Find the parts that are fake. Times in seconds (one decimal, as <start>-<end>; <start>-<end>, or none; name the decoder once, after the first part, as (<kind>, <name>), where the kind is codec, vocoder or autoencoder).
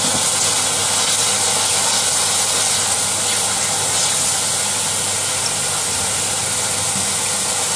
none